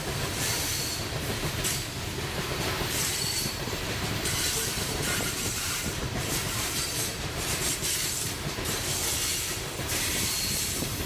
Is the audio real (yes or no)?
no